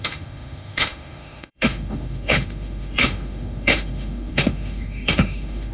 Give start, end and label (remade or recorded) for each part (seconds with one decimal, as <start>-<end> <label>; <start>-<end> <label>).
0.0-5.7 remade